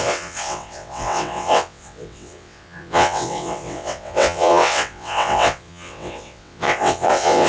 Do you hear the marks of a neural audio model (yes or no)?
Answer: yes